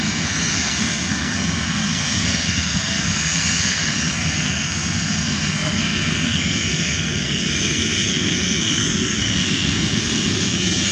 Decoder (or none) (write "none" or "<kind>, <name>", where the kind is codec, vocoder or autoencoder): codec, SNAC